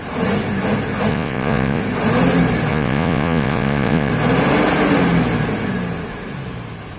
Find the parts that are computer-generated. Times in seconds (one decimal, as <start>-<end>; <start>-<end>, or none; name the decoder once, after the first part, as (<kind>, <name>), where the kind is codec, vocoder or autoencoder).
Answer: 1.1-1.8 (vocoder, Vocos); 2.7-4.1